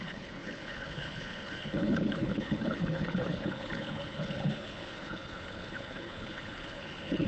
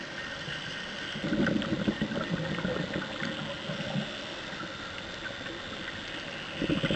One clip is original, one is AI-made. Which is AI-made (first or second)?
first